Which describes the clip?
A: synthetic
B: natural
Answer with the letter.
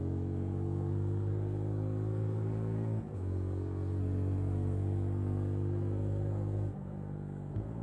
A